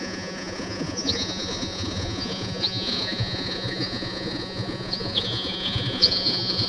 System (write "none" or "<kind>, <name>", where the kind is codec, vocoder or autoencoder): vocoder, Vocos